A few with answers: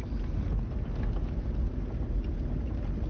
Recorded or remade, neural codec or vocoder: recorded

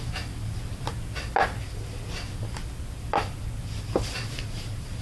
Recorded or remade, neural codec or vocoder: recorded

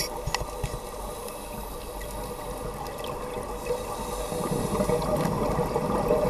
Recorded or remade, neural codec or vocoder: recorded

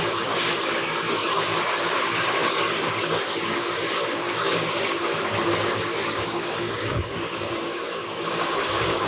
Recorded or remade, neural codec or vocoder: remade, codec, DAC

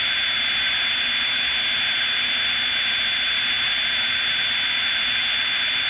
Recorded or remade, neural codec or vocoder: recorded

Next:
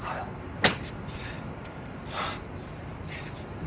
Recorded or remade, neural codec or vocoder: recorded